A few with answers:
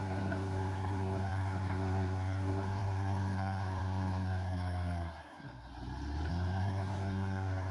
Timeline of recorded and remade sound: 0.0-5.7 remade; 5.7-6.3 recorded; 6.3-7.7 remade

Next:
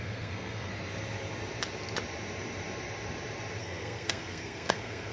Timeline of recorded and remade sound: 0.0-0.7 remade; 0.7-3.6 recorded; 3.6-5.1 remade

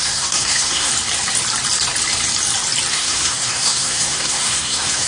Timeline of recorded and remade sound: 0.0-0.9 remade; 0.9-2.9 recorded; 2.9-5.1 remade